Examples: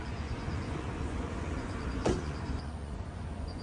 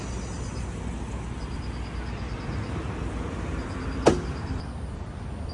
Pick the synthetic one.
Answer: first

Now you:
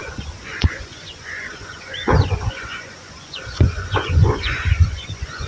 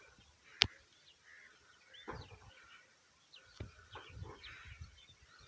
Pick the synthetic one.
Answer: first